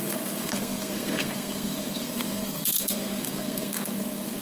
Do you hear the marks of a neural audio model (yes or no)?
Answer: yes